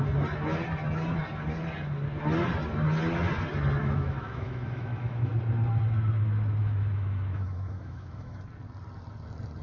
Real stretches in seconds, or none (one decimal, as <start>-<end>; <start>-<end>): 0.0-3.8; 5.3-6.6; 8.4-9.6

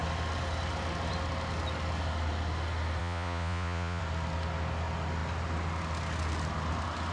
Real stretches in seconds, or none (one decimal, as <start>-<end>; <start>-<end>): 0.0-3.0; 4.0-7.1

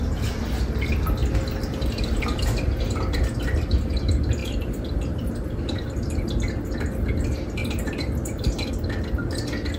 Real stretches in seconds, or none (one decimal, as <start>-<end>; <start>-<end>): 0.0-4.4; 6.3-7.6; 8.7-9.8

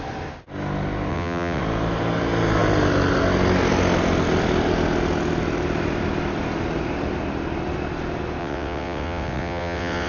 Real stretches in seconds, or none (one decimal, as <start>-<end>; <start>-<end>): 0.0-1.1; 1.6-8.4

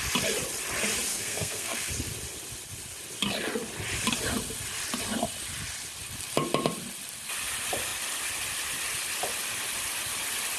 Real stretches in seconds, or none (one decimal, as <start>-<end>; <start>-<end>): 0.0-1.1; 1.9-10.6

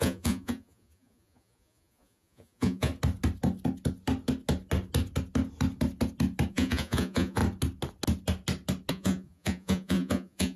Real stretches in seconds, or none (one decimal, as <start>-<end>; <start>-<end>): 2.9-6.5; 7.4-8.9

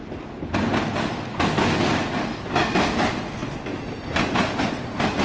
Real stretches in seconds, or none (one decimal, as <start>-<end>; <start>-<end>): 0.0-5.2